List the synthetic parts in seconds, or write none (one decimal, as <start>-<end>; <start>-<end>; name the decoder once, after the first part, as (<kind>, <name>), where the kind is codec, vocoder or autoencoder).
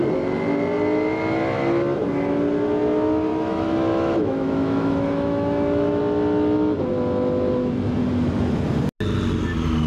3.3-6.0 (autoencoder, DAC-VAE)